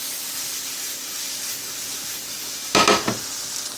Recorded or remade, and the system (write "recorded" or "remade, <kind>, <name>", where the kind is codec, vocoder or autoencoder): recorded